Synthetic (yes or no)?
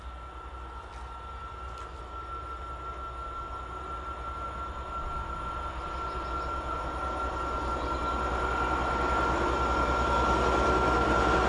no